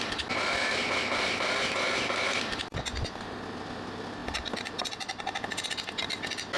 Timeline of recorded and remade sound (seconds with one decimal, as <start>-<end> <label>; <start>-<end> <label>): 0.0-6.6 recorded